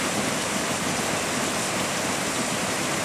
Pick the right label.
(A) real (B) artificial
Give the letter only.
A